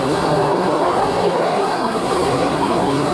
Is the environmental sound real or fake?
fake